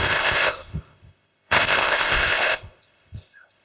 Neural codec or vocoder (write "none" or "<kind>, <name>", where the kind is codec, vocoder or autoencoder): codec, ZipCodec